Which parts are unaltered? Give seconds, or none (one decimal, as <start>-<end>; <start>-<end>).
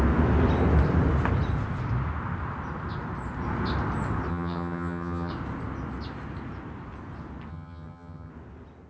0.0-4.3; 5.3-7.5; 8.3-8.9